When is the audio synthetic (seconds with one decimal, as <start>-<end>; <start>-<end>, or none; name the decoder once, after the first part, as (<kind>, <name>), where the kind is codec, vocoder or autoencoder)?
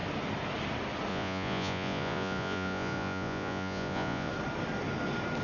1.1-4.3 (vocoder, Vocos)